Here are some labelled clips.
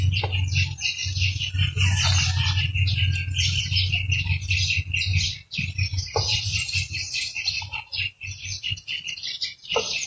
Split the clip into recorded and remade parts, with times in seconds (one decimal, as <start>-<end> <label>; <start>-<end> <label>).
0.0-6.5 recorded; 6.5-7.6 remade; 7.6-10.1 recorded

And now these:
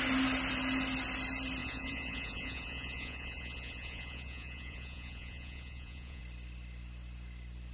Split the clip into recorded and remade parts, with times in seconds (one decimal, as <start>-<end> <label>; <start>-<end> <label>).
0.0-1.6 recorded; 1.6-6.2 remade; 6.2-7.7 recorded

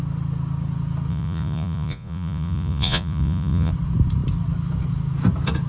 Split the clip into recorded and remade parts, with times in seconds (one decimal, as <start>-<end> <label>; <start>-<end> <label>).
0.0-1.1 recorded; 1.1-3.7 remade; 3.7-5.7 recorded

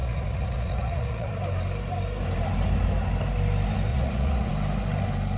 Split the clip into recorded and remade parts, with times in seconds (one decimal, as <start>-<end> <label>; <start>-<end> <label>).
0.0-1.3 remade; 1.3-3.9 recorded; 3.9-4.5 remade; 4.5-5.4 recorded